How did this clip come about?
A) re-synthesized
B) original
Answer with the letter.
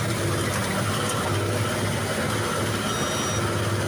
B